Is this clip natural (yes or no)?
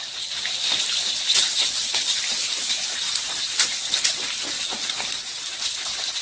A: yes